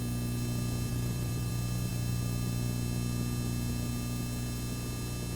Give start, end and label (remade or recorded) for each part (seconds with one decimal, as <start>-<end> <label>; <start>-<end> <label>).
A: 0.0-0.9 recorded; 0.9-1.5 remade; 1.5-5.4 recorded